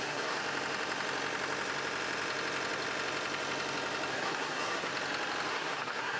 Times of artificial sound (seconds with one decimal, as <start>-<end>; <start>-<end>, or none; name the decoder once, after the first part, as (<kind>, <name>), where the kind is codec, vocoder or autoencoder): 0.0-0.4 (codec, SNAC); 4.1-4.9; 5.5-6.2